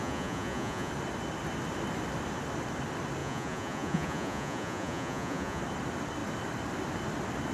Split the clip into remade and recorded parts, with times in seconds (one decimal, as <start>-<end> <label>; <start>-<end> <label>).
0.0-0.9 remade; 0.9-3.2 recorded; 3.2-5.6 remade; 5.6-7.5 recorded